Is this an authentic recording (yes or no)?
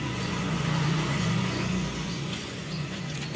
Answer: no